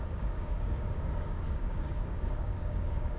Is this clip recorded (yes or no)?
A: no